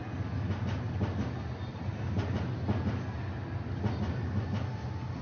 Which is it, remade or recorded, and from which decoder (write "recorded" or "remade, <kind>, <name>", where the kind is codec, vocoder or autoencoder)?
recorded